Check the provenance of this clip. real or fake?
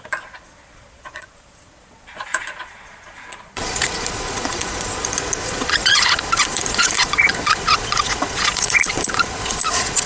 fake